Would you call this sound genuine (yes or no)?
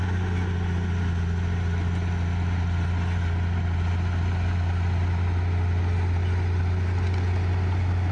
yes